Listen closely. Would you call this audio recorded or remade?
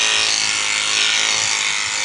recorded